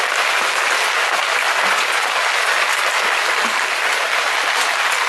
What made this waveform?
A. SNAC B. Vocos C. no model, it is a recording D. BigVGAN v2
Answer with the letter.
C